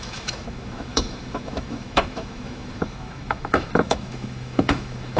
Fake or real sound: fake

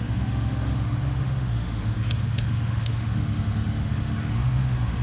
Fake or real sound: fake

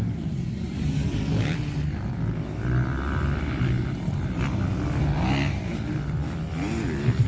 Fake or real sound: real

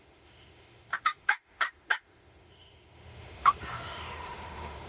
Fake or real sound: fake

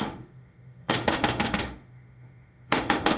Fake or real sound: fake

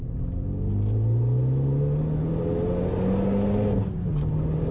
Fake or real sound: real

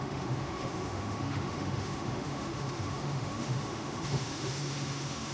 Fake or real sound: fake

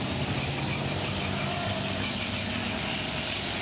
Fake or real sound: real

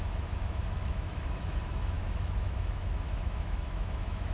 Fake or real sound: fake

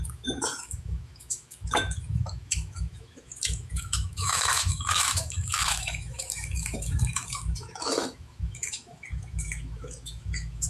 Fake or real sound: fake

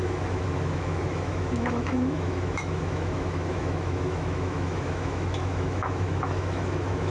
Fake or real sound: fake